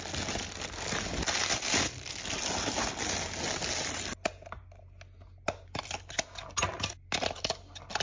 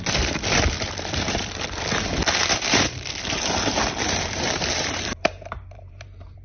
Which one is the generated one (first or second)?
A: second